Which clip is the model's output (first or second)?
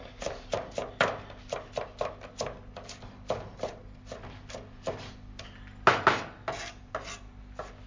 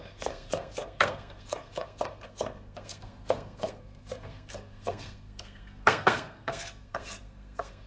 second